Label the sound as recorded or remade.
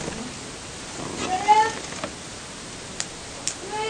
recorded